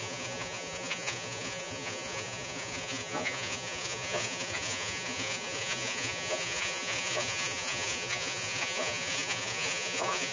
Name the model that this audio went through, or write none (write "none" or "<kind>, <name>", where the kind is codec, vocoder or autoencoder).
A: vocoder, Vocos